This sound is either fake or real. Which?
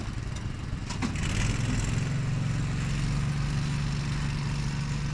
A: real